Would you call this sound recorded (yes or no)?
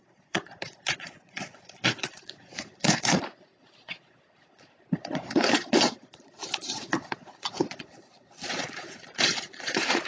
no